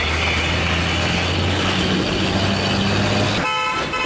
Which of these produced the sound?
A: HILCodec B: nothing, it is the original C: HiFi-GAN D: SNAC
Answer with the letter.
B